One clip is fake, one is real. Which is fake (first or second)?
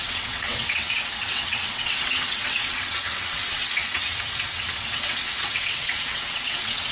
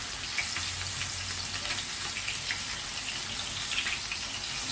first